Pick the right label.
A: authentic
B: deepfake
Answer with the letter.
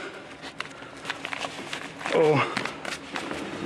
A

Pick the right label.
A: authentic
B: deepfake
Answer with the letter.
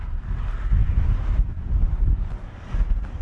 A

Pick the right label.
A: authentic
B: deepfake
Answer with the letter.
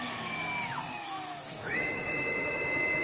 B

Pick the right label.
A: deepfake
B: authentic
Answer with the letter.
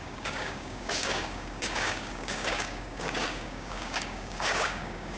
A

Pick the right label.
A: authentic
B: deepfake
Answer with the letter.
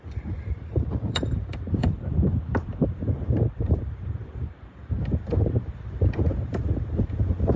B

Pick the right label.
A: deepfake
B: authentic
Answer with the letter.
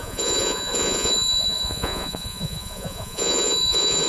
A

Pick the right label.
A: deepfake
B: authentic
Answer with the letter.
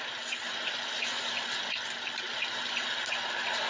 B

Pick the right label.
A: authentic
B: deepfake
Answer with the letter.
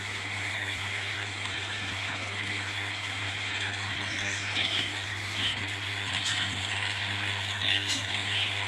B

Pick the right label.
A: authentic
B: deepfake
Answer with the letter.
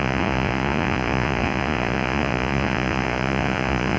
B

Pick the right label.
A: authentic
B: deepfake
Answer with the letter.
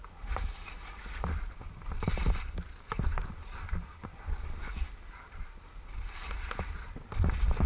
A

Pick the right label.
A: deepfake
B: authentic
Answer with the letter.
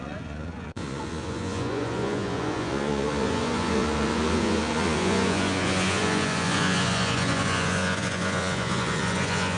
A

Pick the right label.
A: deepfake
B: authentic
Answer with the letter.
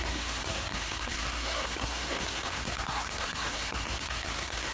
A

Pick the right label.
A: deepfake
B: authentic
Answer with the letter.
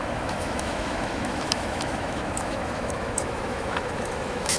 A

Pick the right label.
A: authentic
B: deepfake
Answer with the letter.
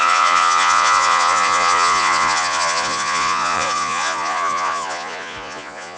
B